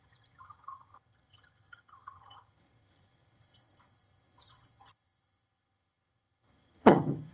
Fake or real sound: fake